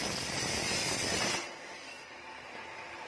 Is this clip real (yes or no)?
yes